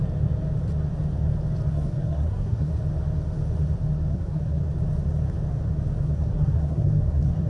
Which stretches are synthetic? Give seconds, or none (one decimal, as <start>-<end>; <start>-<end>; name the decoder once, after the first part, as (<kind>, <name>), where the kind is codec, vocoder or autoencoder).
1.7-2.7 (codec, SNAC); 4.1-4.6; 6.0-7.5